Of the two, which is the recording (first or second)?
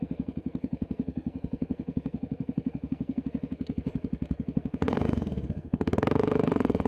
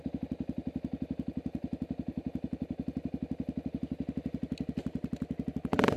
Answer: second